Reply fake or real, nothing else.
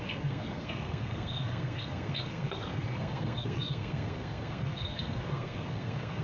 fake